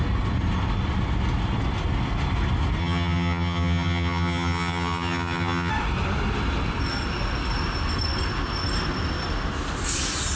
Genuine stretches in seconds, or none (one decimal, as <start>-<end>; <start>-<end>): 0.0-2.8; 5.7-10.4